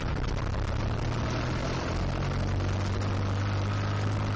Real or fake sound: real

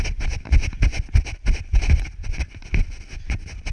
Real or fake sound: real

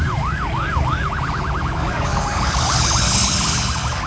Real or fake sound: fake